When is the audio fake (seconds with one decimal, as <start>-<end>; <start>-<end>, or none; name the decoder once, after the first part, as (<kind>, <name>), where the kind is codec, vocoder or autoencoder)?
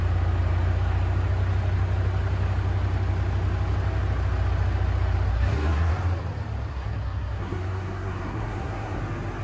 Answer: 5.3-5.9 (codec, SNAC); 6.7-9.0